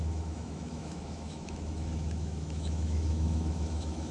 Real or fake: fake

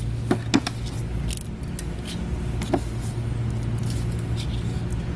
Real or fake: real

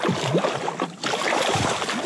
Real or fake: real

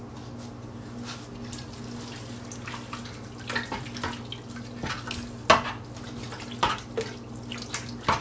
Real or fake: real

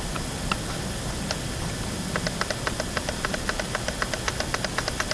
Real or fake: real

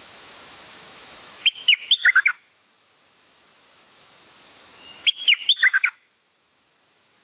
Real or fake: fake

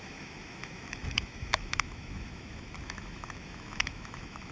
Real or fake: fake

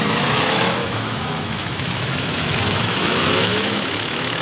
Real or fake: fake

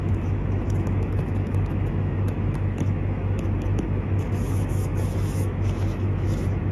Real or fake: fake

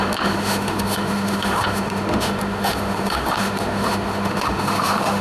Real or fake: fake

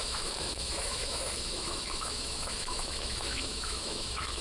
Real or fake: fake